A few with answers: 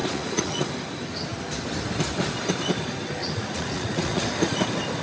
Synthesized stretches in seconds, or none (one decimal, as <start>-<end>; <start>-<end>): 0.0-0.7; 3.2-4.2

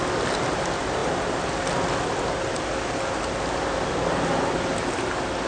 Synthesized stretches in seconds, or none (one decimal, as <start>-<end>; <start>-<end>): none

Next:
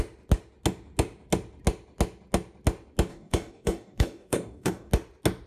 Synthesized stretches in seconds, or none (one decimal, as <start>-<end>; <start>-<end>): 3.1-4.9

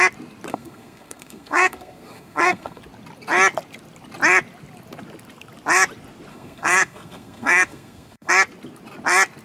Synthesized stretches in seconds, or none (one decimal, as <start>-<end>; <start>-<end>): 0.5-2.8; 6.3-8.3